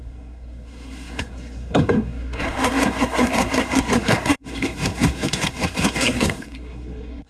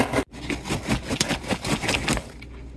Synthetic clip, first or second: first